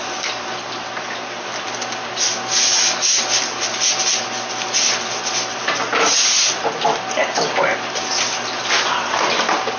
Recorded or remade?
recorded